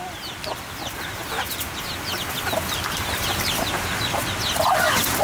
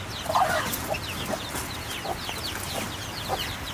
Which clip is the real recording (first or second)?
second